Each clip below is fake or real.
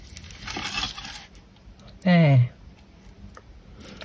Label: real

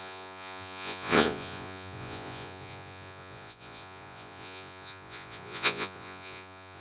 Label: fake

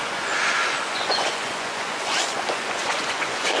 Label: fake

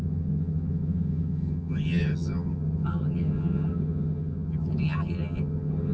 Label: fake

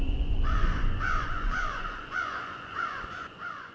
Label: fake